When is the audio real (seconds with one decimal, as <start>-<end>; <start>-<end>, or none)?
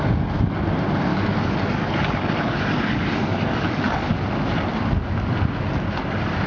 0.0-1.1; 4.1-6.5